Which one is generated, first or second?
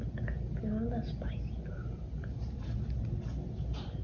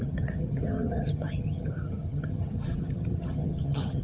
second